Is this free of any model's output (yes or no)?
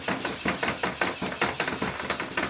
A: yes